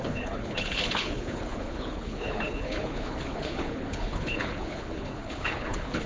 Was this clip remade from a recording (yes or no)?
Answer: yes